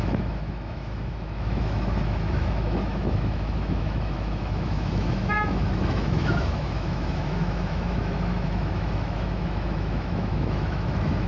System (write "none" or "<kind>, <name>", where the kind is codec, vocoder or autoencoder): autoencoder, DAC-VAE